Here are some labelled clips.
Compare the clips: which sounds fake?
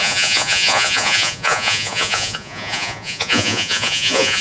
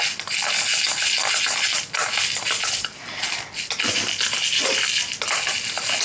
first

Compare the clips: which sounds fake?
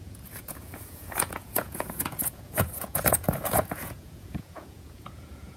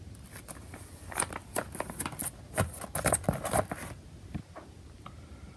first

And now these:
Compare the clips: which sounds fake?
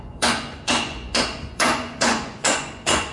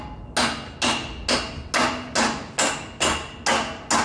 first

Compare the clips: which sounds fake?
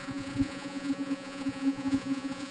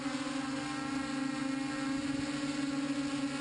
first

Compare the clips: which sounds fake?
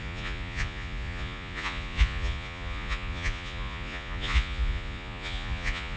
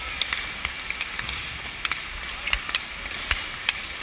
first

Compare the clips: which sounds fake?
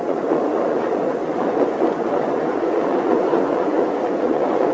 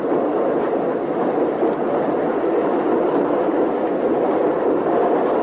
first